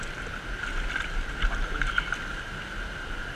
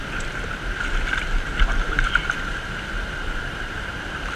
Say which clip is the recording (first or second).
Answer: first